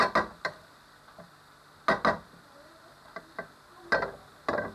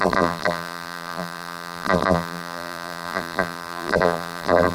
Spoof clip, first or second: second